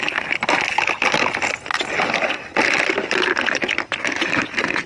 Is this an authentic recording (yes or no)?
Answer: yes